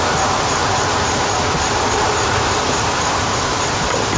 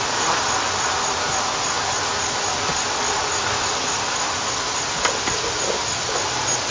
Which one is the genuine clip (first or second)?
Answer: second